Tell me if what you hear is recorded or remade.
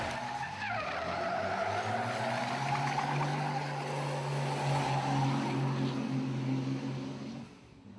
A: recorded